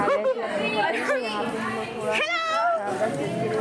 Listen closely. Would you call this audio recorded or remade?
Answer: recorded